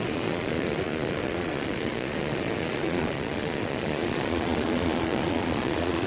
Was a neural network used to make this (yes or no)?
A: yes